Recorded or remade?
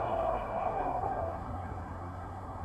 remade